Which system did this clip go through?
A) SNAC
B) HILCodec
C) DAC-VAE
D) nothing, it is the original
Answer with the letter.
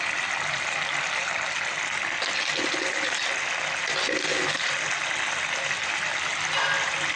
D